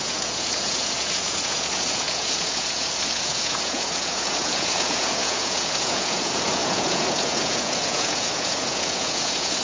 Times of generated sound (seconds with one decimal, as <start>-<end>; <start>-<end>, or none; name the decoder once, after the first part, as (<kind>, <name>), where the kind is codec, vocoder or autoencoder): 0.0-9.6 (vocoder, Vocos)